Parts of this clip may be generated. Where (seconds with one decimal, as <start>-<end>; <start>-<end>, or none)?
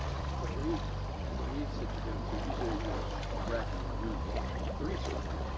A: 0.0-0.6; 1.1-1.5; 4.2-5.6